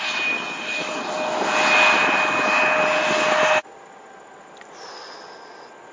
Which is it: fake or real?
real